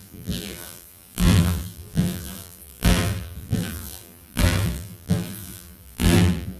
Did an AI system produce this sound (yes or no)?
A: yes